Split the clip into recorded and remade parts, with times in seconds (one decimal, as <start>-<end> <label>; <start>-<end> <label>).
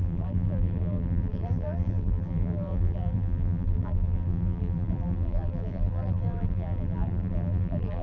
0.0-8.0 remade